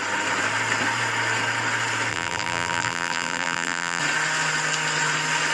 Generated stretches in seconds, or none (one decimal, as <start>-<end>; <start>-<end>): 2.1-4.0